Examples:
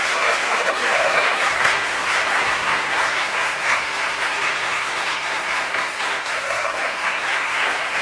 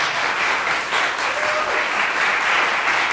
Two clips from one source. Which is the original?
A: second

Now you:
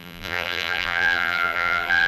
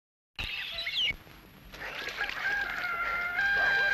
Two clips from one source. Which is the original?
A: second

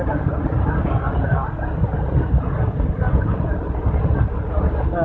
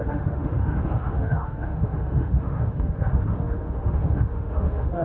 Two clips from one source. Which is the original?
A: first